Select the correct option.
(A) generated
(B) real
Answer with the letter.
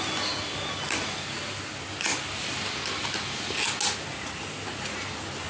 B